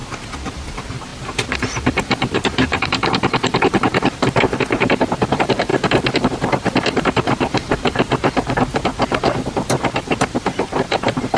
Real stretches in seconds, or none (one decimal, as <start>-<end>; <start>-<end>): 0.0-0.5; 5.7-6.2